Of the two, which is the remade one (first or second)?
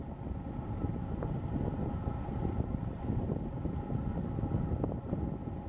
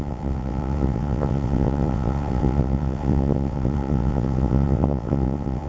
second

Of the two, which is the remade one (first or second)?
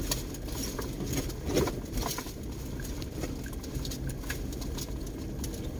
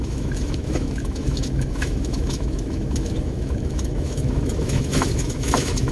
second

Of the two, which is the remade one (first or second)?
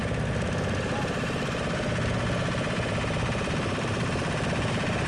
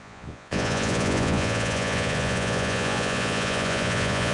second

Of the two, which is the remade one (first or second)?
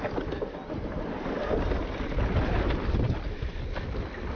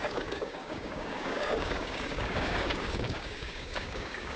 second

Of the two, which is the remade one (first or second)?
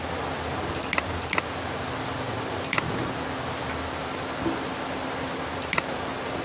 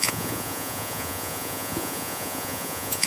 second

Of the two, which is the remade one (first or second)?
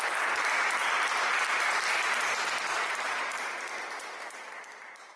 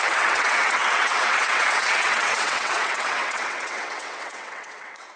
second